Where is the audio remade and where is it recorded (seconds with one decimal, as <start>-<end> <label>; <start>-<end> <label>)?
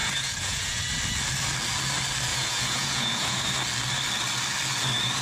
0.0-0.8 remade; 0.8-2.3 recorded; 2.3-3.5 remade; 3.5-5.2 recorded